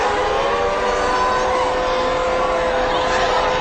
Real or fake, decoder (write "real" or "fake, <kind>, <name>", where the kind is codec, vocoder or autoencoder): real